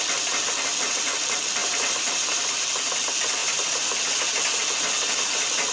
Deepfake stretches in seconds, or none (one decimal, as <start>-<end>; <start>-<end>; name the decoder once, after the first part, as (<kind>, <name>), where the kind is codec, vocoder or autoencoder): 1.6-2.6 (vocoder, BigVGAN v2); 3.4-4.2